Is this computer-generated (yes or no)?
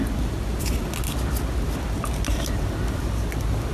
no